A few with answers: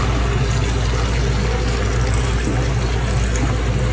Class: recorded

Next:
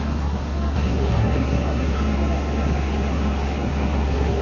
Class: remade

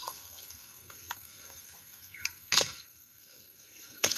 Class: remade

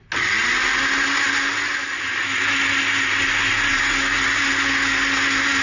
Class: recorded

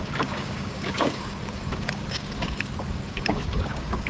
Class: remade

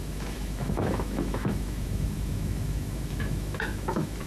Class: remade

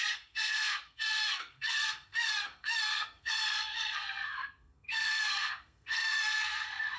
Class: remade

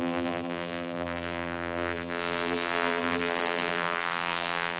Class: remade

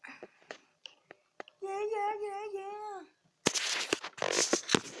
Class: recorded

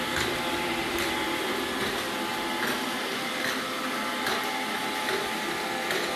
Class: recorded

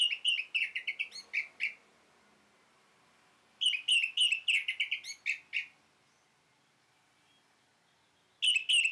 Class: recorded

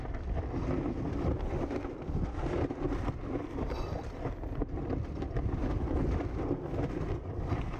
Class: recorded